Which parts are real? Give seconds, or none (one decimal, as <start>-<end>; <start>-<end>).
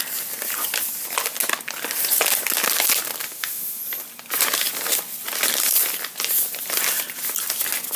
0.0-3.3; 3.8-8.0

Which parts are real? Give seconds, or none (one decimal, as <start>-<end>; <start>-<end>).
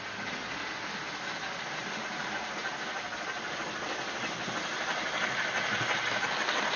0.0-6.8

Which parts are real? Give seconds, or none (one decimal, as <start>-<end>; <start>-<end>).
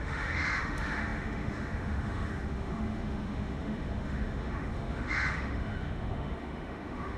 none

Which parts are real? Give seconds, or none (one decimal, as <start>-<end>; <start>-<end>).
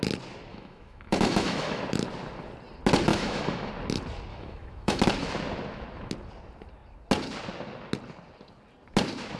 0.0-0.5; 1.8-3.1; 3.7-4.3; 5.0-9.4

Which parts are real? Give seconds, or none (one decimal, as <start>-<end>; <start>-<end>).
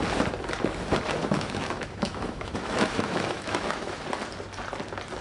0.0-1.2; 4.0-5.2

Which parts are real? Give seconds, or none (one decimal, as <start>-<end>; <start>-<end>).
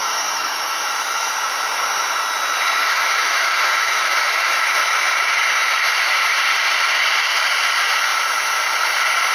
1.3-2.8; 5.4-9.3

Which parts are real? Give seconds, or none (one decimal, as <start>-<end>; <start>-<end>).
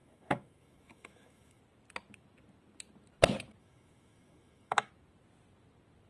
1.6-3.6; 4.9-6.1